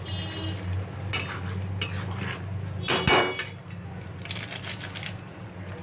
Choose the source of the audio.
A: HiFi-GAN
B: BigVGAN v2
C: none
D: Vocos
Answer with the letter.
C